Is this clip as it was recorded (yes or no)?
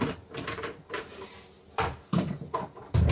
no